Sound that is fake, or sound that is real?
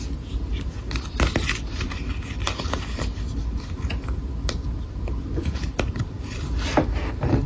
real